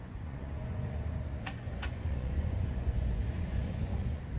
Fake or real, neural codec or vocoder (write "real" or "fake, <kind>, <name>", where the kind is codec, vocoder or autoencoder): fake, vocoder, Vocos